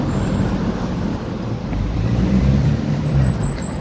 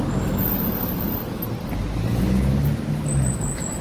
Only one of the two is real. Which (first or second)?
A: second